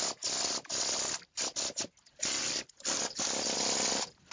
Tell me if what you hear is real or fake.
real